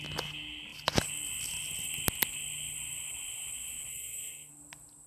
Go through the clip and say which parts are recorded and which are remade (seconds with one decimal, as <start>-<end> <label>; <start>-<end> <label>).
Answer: 0.0-3.9 recorded; 3.9-4.5 remade; 4.5-5.1 recorded